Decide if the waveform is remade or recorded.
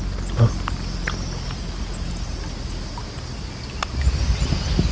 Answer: recorded